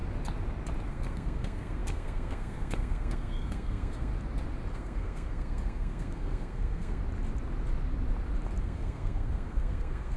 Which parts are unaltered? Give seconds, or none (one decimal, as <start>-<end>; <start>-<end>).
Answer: 0.0-0.9; 4.1-4.7; 7.0-8.6